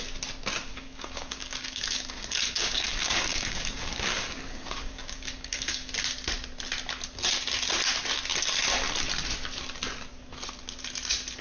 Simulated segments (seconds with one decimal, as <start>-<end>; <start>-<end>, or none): 0.7-5.9